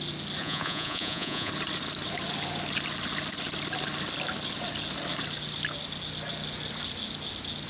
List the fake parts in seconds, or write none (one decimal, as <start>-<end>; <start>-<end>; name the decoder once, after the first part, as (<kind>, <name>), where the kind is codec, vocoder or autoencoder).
0.4-1.5 (vocoder, Vocos)